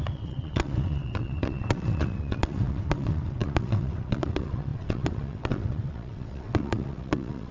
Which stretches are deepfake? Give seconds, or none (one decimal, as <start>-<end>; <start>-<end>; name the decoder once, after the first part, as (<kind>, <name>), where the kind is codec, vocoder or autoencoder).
0.0-7.5 (vocoder, WaveNeXt)